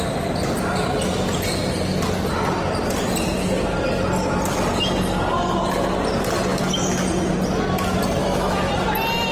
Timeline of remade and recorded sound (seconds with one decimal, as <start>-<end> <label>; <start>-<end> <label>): 0.0-8.2 recorded; 8.2-8.7 remade; 8.7-9.3 recorded